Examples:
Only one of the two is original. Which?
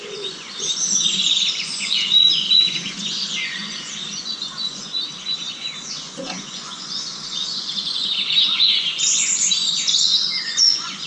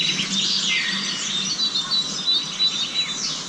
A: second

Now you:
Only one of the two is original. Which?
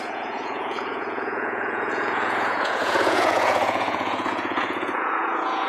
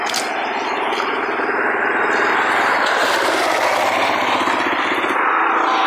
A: second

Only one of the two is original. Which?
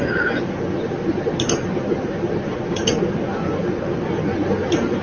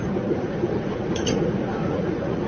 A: first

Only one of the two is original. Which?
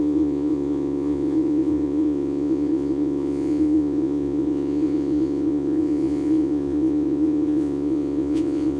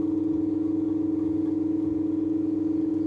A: second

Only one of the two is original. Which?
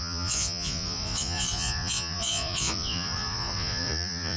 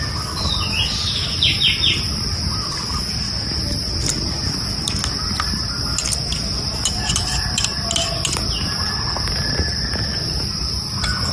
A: second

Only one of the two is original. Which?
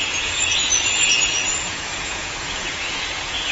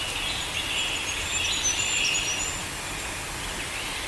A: second